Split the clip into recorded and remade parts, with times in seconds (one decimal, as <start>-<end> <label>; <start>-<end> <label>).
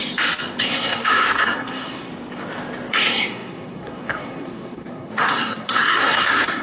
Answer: 0.0-0.6 recorded; 0.6-2.1 remade; 2.1-2.9 recorded; 2.9-6.6 remade